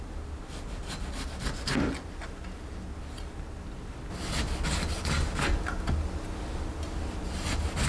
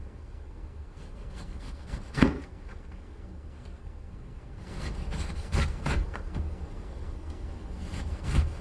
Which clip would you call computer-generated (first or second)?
second